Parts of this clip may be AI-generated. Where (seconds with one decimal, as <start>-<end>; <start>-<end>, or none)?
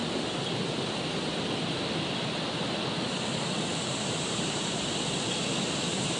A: 3.7-4.9